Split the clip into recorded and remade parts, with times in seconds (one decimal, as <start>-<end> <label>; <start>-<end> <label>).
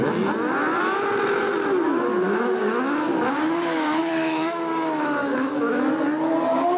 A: 0.0-2.1 recorded; 2.1-5.9 remade; 5.9-6.8 recorded